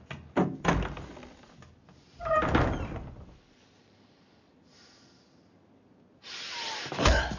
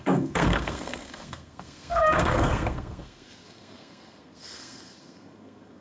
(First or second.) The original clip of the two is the first